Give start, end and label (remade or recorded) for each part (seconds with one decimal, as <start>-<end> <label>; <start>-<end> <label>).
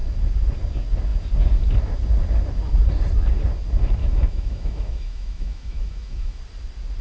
0.0-4.0 recorded; 4.0-6.4 remade; 6.4-7.0 recorded